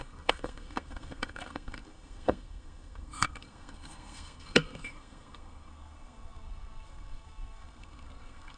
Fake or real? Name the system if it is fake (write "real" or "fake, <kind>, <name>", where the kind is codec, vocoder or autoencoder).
fake, codec, SNAC